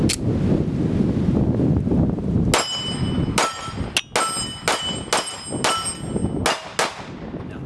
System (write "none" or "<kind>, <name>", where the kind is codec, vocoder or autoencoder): none